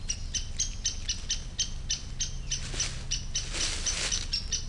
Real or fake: real